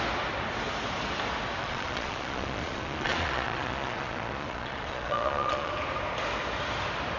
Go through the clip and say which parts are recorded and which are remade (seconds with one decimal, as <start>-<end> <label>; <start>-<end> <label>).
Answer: 0.0-1.6 recorded; 1.6-5.7 remade; 5.7-7.2 recorded